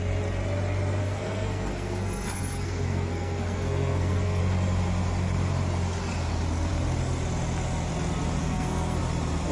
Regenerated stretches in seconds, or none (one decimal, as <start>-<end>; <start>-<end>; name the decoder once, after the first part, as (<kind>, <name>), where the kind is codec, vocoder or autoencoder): 1.0-4.4 (codec, SNAC); 8.4-9.0